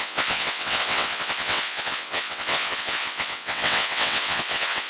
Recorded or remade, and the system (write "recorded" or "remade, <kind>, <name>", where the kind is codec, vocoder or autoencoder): remade, vocoder, WaveNeXt